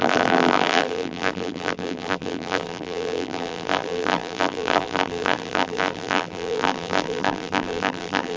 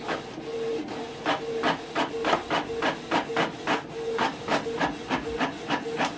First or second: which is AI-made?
first